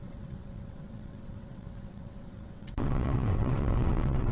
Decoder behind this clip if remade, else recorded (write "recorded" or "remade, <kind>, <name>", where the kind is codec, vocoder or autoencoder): remade, vocoder, WaveNeXt